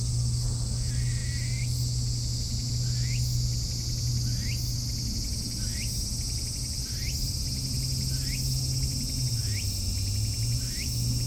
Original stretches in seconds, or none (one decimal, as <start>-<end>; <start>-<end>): 0.0-11.3